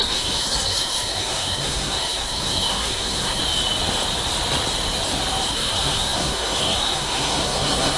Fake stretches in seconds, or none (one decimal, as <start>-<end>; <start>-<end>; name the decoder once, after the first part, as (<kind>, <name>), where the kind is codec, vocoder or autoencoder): 0.0-3.4 (codec, SNAC); 5.5-8.0